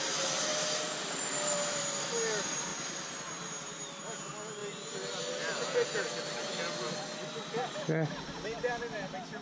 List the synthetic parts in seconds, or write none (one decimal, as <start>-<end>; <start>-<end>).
0.5-1.8; 4.6-5.2